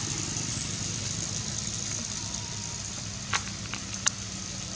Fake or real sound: real